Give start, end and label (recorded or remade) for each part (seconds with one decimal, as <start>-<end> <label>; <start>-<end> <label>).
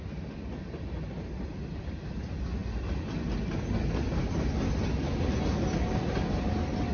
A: 0.0-6.9 recorded